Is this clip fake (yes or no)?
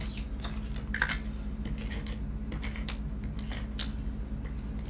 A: no